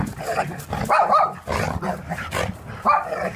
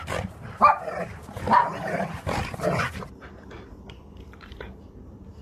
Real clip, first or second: first